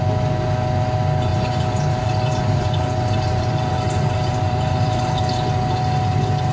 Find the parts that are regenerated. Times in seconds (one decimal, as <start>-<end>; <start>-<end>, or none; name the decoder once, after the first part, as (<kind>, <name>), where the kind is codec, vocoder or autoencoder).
1.3-5.2 (vocoder, BigVGAN v2)